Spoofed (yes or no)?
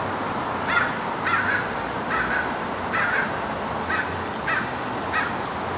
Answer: no